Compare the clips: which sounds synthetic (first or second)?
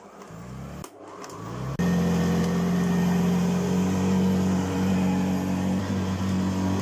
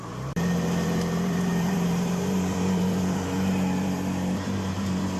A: second